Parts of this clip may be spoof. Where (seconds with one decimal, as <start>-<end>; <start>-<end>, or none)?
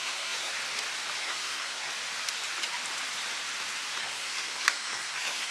0.0-0.5; 1.2-1.9; 4.0-5.5